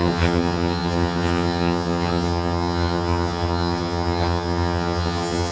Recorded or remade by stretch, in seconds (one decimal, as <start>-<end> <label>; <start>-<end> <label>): 0.0-5.5 remade